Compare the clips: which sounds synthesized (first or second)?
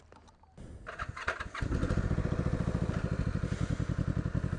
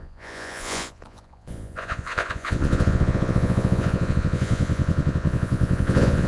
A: second